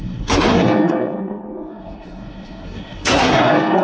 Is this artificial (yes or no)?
yes